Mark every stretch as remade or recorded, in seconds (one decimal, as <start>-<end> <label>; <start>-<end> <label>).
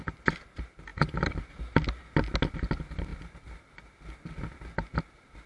0.0-5.5 recorded